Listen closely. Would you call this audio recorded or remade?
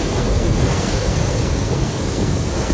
remade